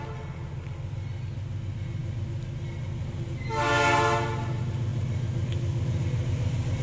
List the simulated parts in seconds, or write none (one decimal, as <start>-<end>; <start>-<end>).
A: none